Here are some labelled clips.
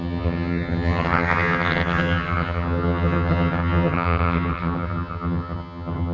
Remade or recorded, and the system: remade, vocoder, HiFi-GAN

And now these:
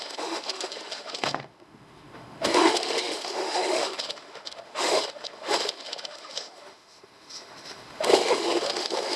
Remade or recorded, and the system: remade, autoencoder, DAC-VAE